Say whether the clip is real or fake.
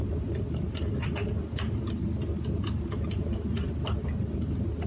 real